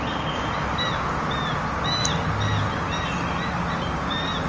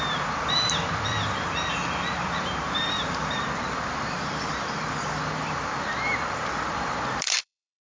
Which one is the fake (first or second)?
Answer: second